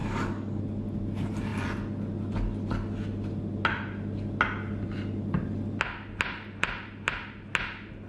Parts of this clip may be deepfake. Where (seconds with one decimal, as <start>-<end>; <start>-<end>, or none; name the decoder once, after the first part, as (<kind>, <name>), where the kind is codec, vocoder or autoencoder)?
0.0-0.6 (codec, DAC)